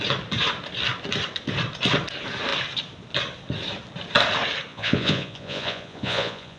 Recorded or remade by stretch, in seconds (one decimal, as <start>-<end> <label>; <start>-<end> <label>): 0.0-4.7 recorded; 4.7-6.6 remade